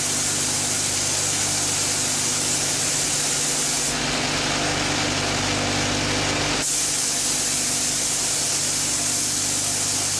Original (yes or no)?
yes